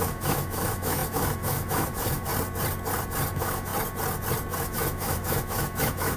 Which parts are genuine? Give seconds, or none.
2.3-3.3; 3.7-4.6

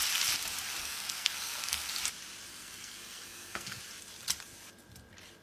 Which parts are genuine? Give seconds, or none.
0.0-0.8; 1.9-2.5; 3.8-5.4

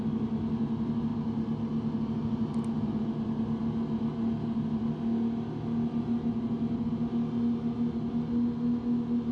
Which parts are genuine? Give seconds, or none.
0.0-9.3

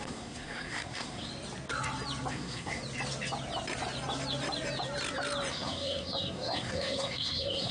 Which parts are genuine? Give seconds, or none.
1.3-2.3; 2.8-5.5

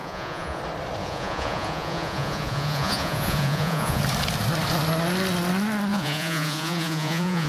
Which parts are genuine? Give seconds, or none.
0.6-1.0; 4.0-5.9

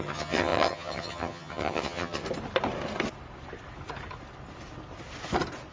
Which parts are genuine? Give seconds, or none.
2.2-5.7